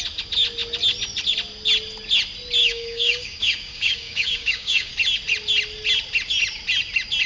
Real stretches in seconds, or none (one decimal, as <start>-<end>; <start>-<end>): 0.0-2.6; 4.9-7.3